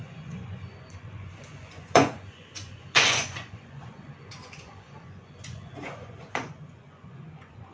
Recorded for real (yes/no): no